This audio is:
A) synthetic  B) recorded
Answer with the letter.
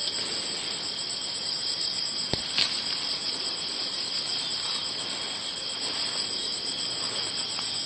B